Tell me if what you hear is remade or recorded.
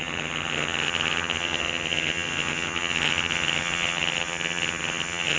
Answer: remade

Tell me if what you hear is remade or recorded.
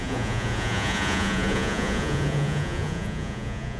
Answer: remade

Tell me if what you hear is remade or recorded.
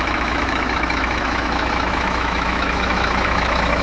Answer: remade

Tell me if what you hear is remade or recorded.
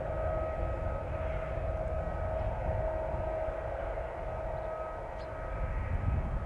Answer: recorded